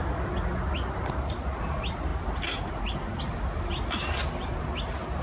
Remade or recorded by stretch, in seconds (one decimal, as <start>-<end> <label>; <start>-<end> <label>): 0.0-5.2 recorded